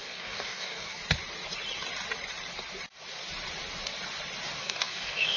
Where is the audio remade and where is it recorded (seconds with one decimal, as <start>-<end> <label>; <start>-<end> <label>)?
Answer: 0.0-1.0 remade; 1.0-4.6 recorded; 4.6-5.4 remade

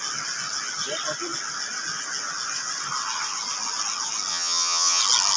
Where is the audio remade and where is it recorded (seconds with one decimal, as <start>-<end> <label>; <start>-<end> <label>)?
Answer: 0.0-4.3 recorded; 4.3-5.0 remade; 5.0-5.4 recorded

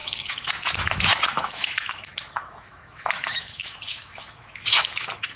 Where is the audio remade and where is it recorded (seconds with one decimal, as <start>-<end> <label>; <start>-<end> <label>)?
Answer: 0.0-5.4 remade

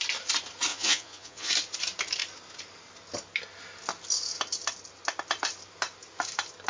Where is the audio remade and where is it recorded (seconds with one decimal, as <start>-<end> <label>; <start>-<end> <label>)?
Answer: 0.0-0.7 recorded; 0.7-1.5 remade; 1.5-6.7 recorded

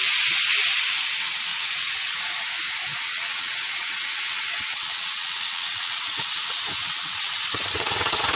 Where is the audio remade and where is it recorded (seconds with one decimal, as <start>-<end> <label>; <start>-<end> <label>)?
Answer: 0.0-1.5 recorded; 1.5-2.2 remade; 2.2-3.1 recorded; 3.1-8.4 remade

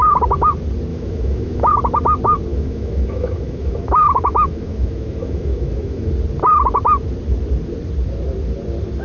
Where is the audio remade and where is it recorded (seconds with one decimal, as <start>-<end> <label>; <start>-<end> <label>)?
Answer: 0.0-0.9 recorded; 0.9-1.7 remade; 1.7-2.5 recorded; 2.5-6.1 remade; 6.1-9.0 recorded